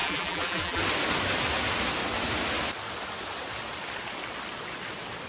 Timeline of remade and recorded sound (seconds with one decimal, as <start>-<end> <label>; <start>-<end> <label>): 0.0-0.8 remade; 0.8-5.3 recorded